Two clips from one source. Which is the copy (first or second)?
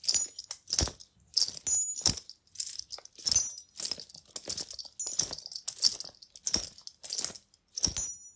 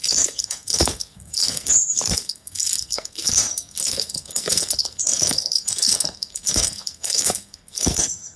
second